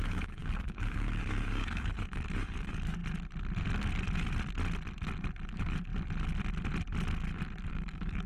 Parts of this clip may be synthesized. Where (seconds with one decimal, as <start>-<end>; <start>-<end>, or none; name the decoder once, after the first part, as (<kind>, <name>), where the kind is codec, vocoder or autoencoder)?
0.0-3.0 (codec, DAC); 5.5-5.9; 7.7-8.3